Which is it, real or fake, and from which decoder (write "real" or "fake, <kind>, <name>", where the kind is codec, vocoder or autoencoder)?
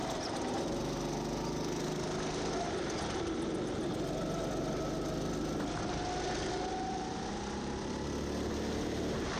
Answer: real